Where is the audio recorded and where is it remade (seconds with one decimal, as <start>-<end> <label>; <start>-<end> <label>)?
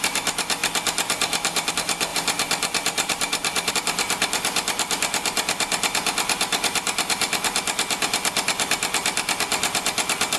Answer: 0.0-2.1 recorded; 2.1-3.7 remade; 3.7-10.4 recorded